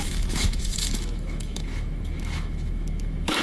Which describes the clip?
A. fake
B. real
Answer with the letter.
A